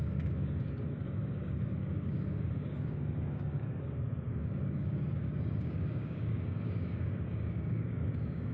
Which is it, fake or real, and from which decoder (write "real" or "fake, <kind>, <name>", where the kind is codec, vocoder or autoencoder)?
fake, codec, DAC